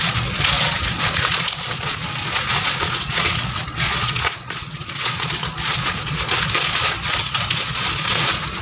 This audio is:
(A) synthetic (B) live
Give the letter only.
A